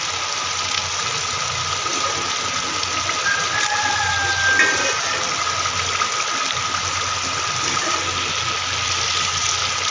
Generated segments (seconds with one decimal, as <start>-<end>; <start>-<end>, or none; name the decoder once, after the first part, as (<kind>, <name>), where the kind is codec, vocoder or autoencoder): none